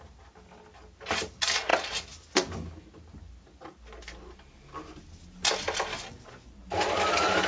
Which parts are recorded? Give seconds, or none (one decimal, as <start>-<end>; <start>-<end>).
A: 0.0-7.5